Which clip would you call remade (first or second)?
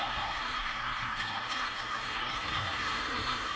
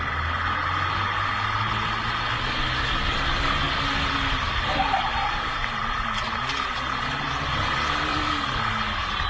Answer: first